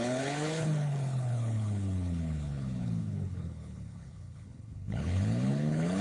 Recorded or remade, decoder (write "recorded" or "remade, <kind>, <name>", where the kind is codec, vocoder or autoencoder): remade, codec, HILCodec